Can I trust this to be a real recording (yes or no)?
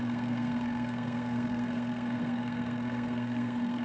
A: no